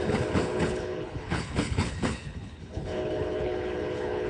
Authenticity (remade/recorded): remade